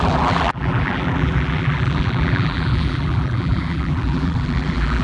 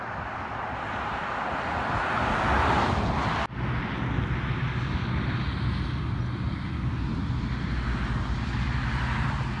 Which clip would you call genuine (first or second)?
second